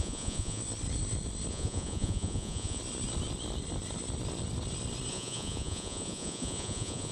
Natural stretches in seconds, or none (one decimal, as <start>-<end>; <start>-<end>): 0.6-1.5; 2.8-5.1